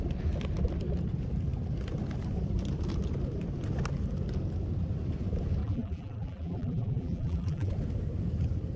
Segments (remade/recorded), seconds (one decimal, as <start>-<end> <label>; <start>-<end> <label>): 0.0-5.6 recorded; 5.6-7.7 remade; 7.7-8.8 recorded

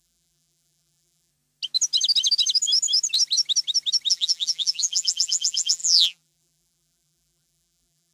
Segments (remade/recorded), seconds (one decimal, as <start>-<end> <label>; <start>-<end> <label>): 0.0-1.3 remade; 1.3-4.1 recorded; 4.1-8.1 remade

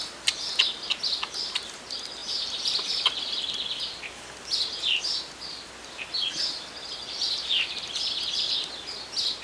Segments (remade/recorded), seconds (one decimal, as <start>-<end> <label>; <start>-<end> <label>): 0.0-2.2 recorded; 2.2-4.0 remade; 4.0-9.4 recorded